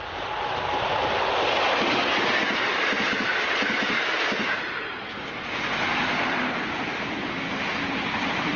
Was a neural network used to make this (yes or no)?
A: no